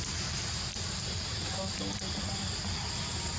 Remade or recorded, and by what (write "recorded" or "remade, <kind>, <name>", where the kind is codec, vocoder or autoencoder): recorded